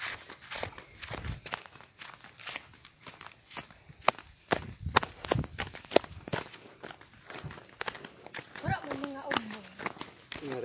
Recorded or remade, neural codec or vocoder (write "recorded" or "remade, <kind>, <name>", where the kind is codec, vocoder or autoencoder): recorded